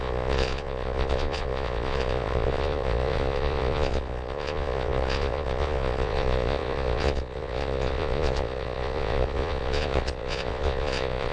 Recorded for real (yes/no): no